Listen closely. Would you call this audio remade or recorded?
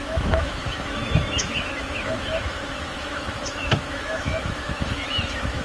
remade